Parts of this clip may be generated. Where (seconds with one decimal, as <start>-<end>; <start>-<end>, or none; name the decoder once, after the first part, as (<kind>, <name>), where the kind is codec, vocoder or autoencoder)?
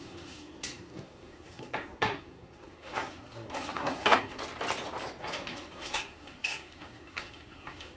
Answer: 0.0-4.4 (codec, SNAC); 5.2-8.0